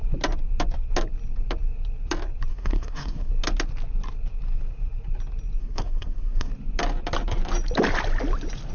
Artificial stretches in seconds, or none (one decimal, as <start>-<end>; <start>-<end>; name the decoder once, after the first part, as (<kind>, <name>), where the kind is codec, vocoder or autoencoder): 2.5-3.3 (codec, SNAC); 5.6-6.5